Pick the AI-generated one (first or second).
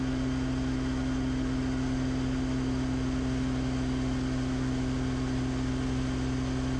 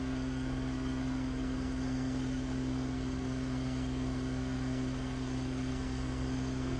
second